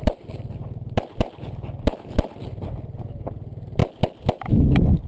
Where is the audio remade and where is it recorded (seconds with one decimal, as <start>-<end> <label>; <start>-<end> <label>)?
0.0-5.1 recorded